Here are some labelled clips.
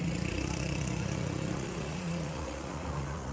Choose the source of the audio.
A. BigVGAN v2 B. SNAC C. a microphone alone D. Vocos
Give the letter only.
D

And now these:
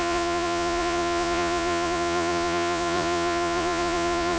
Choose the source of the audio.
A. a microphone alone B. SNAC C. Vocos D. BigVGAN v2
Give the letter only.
C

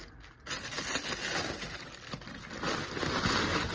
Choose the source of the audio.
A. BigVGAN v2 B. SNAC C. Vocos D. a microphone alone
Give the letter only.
D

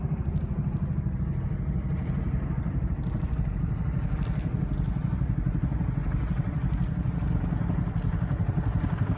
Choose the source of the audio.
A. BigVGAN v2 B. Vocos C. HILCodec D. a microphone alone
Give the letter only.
D